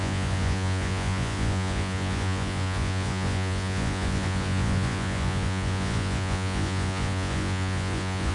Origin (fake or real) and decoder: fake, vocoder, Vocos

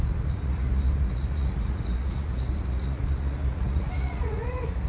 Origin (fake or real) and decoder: fake, vocoder, Vocos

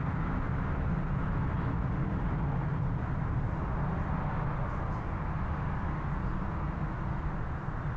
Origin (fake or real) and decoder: real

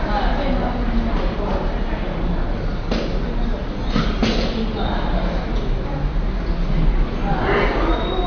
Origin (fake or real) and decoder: real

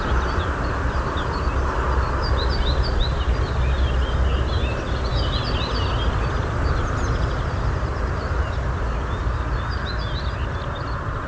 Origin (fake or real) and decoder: real